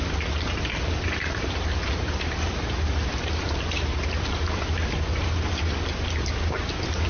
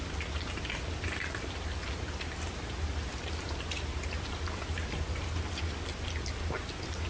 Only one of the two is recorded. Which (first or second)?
second